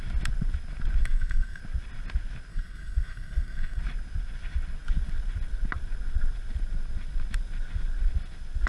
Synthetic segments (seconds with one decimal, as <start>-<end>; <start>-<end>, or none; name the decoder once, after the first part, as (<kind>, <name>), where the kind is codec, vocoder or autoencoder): 1.0-1.6 (codec, SNAC); 2.5-3.8